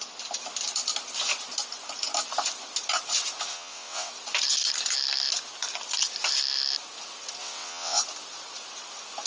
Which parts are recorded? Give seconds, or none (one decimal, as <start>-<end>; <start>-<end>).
0.0-3.5; 4.1-7.4; 8.0-9.3